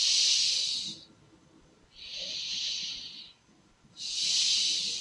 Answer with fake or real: real